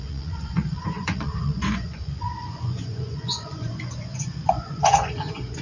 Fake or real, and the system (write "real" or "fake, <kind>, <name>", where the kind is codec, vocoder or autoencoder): fake, vocoder, Vocos